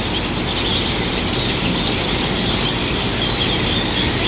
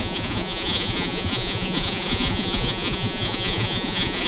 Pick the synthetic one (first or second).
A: second